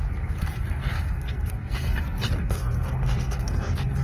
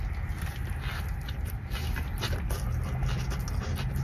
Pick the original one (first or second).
second